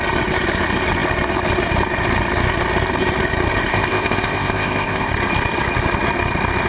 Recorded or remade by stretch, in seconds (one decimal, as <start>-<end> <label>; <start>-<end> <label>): 0.0-3.7 recorded; 3.7-5.1 remade; 5.1-6.7 recorded